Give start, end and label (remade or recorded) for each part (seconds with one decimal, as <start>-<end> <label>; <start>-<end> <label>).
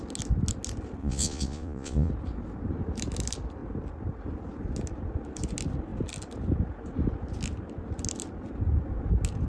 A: 0.0-1.0 recorded; 1.0-2.1 remade; 2.1-9.5 recorded